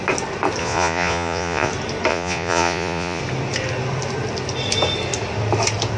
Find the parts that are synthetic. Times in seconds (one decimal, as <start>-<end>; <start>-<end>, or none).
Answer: 0.6-1.7; 2.1-3.2